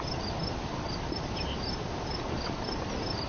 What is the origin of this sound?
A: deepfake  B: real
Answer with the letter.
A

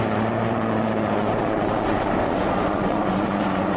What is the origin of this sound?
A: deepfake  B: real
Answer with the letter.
A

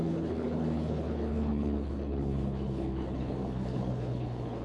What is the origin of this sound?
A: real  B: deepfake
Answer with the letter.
B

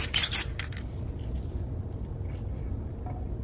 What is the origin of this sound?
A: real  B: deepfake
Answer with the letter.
A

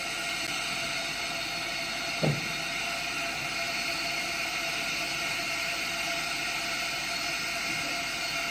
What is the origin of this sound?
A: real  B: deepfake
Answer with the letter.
A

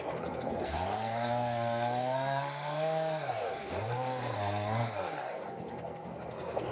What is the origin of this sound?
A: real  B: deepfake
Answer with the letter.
B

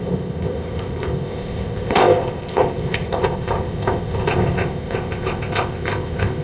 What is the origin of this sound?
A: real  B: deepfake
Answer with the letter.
B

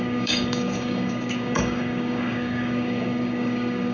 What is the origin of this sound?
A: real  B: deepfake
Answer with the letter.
B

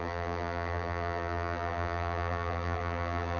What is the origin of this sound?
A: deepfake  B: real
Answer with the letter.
A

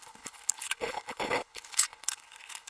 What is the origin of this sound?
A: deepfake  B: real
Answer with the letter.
A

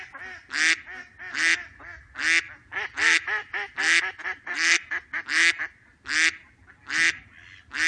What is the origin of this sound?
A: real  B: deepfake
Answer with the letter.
A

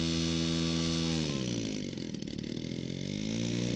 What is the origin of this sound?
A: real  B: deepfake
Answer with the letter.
A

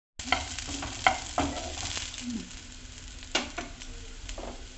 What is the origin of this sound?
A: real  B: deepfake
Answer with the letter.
A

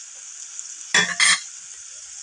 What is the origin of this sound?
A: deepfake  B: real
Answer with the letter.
B